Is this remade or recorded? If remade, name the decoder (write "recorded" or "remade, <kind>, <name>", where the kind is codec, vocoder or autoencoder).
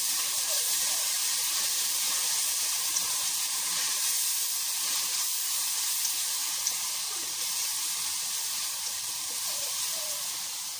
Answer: remade, vocoder, BigVGAN v2